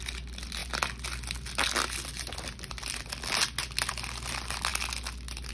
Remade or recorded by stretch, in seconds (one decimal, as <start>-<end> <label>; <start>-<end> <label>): 0.0-5.5 recorded